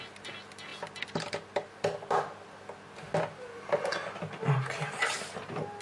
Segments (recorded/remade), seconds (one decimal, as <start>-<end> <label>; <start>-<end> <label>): 0.0-5.8 recorded